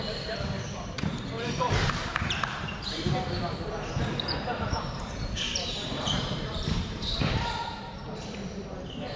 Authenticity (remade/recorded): remade